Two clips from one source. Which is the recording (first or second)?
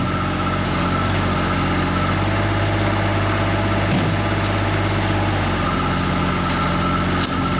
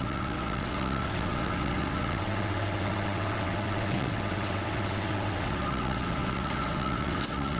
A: first